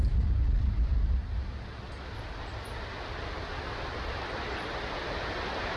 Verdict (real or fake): real